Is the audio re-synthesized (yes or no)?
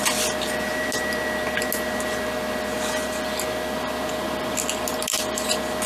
no